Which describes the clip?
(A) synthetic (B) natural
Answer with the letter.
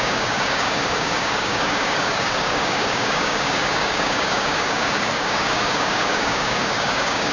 A